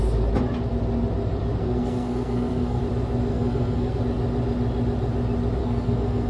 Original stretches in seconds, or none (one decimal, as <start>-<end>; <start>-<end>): 0.0-1.6; 2.8-3.3; 4.0-5.6